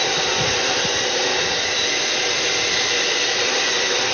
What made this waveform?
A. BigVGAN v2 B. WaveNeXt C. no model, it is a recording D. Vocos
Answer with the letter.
C